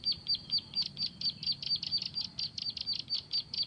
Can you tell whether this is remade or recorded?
recorded